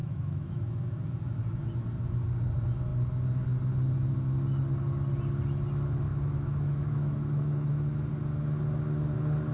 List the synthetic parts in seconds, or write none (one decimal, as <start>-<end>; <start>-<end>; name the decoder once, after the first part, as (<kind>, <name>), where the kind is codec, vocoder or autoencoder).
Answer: 0.0-0.7 (autoencoder, DAC-VAE); 6.1-8.1